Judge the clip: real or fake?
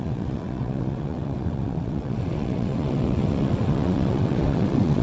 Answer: fake